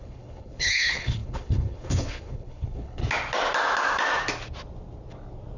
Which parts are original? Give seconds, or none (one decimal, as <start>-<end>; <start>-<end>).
3.0-5.6